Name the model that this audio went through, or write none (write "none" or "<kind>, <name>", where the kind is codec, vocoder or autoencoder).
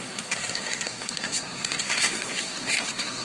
codec, SNAC